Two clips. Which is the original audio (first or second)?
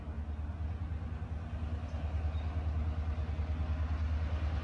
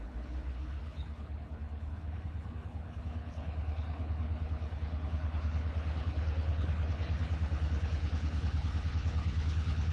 first